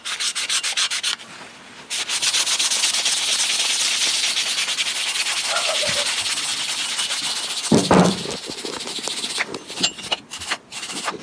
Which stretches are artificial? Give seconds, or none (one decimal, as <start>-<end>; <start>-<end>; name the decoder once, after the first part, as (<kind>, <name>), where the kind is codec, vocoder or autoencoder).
none

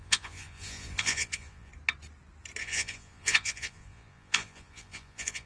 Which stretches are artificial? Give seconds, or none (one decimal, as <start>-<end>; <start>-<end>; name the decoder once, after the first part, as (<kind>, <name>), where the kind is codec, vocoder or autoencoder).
0.0-1.7 (vocoder, Vocos); 2.6-5.5